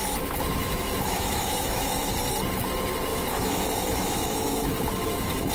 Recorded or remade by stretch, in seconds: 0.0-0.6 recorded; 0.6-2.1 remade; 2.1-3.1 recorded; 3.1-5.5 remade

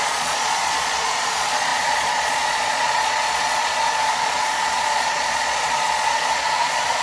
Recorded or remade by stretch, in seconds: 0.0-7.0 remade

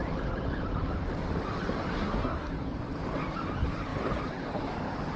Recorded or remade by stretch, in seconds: 0.0-1.9 recorded; 1.9-2.5 remade; 2.5-5.2 recorded

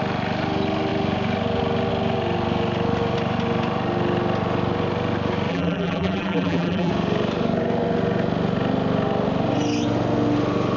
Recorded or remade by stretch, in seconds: 0.0-5.5 recorded; 5.5-6.9 remade; 6.9-10.8 recorded